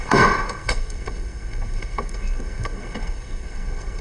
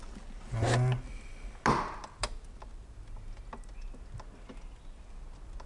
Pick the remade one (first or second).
first